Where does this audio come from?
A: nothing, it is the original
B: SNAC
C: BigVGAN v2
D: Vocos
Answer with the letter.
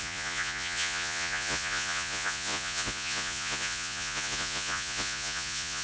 D